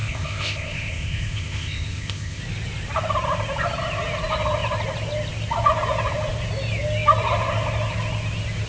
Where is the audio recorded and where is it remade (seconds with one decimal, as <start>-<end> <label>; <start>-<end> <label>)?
0.0-2.4 remade; 2.4-8.7 recorded